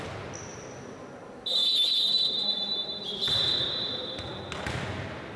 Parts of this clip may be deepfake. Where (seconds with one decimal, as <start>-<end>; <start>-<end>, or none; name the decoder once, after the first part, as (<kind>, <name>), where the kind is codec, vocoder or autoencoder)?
0.5-1.0 (vocoder, BigVGAN v2); 1.6-4.2

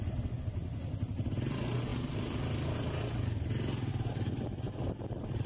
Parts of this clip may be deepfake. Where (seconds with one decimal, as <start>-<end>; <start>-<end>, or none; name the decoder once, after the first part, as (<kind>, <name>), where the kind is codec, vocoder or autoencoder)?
1.9-2.4 (vocoder, BigVGAN v2); 3.9-5.5

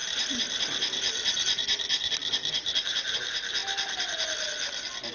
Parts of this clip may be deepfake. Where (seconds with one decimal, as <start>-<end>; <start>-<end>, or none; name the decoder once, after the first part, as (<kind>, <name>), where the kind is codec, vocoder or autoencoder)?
0.0-3.1 (vocoder, BigVGAN v2)

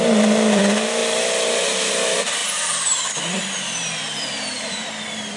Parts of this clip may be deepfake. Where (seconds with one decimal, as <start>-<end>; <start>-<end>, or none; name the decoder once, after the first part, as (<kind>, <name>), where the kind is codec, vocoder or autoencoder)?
0.0-1.0 (vocoder, BigVGAN v2); 1.8-5.4

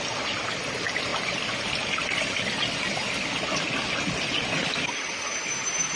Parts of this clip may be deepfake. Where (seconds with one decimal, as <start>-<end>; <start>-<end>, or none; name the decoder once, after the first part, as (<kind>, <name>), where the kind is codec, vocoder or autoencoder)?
none

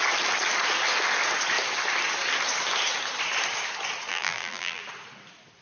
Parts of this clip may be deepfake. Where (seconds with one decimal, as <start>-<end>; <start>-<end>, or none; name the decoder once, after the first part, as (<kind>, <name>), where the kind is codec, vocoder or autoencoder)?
4.1-4.8 (vocoder, BigVGAN v2)

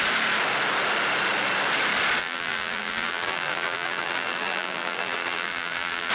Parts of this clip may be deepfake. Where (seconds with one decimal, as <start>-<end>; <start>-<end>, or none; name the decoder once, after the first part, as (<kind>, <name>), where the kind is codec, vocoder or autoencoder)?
2.2-6.1 (vocoder, BigVGAN v2)

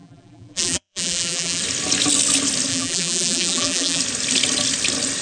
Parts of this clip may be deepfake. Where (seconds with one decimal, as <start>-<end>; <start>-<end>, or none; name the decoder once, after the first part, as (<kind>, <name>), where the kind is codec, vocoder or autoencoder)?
0.0-1.6 (vocoder, BigVGAN v2); 2.7-4.0